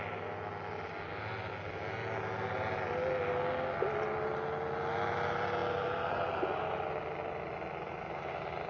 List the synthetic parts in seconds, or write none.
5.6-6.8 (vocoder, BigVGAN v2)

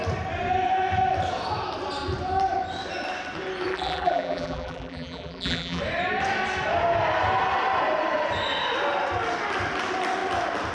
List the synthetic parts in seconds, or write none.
3.7-5.8 (vocoder, BigVGAN v2)